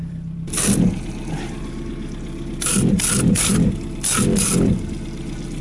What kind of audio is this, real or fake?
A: real